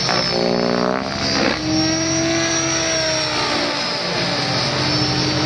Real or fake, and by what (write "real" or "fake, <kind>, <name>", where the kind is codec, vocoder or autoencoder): real